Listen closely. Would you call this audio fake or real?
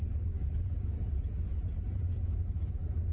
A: fake